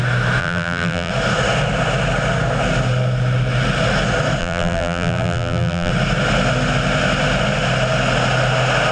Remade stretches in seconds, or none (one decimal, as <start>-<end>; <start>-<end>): 0.4-1.1; 4.4-5.9